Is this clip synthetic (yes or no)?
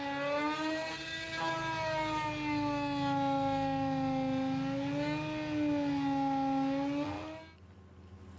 no